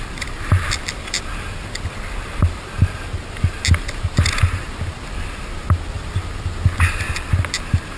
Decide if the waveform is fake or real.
real